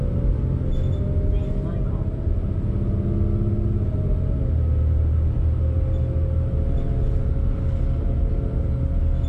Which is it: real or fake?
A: real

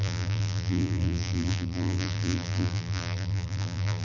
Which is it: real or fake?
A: fake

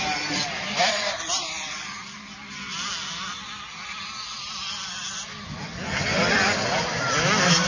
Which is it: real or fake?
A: fake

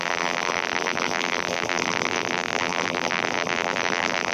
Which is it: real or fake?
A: fake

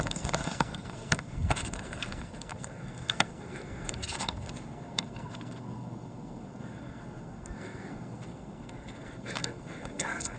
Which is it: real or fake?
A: fake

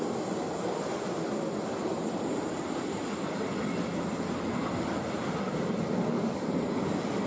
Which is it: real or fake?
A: real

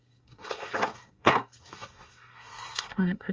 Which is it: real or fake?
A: fake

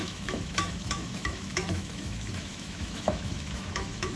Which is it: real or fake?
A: fake